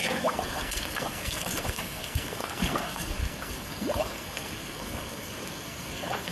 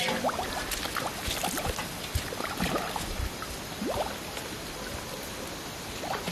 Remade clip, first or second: first